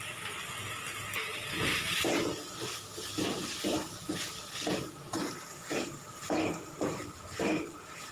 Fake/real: real